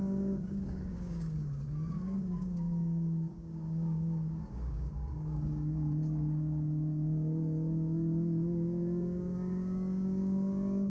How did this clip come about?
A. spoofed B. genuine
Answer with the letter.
A